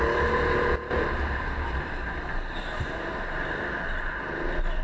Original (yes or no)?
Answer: yes